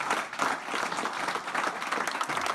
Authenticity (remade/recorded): recorded